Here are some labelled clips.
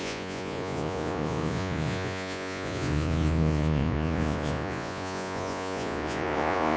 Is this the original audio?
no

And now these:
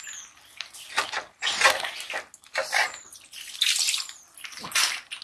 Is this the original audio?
yes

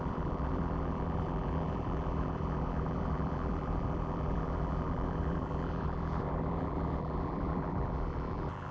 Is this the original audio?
no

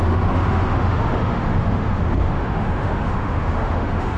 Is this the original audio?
no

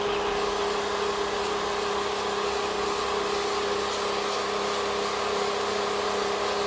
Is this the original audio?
yes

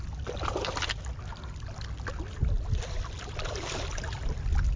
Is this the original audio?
yes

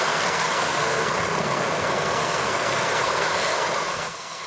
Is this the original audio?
no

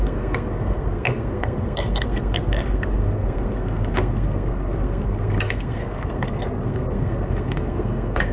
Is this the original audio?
no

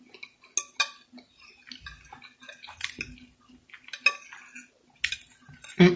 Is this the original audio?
yes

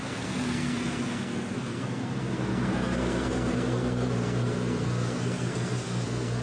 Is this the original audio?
no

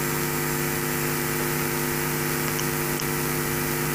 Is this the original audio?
yes